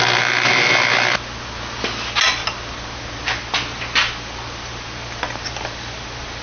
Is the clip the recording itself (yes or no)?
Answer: yes